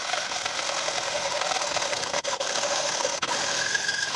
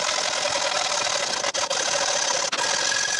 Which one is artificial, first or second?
first